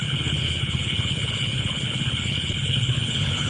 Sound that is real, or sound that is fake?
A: fake